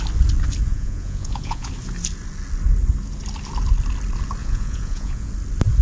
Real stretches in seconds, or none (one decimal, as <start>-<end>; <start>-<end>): 0.0-0.7; 1.7-4.4; 5.3-5.8